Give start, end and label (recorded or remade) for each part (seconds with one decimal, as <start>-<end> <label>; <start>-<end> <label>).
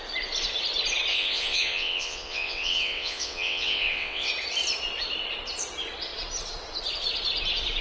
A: 0.0-1.1 recorded; 1.1-4.3 remade; 4.3-7.8 recorded